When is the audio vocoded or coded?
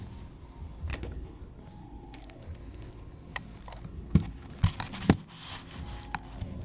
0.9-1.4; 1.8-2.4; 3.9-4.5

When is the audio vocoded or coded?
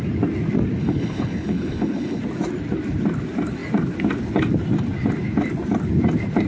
0.8-2.2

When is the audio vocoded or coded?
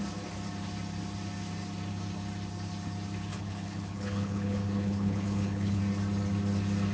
3.3-5.8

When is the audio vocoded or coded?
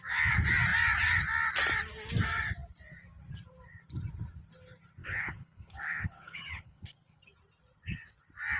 5.0-7.2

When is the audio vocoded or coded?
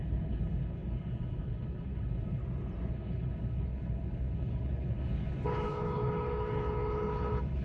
0.0-2.4; 2.9-7.6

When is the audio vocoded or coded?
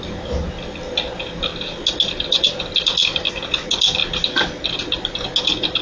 none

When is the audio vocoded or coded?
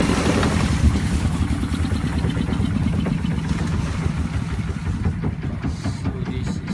0.8-1.4